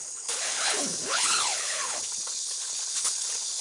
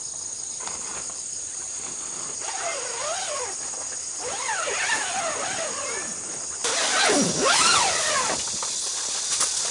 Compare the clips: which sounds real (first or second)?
second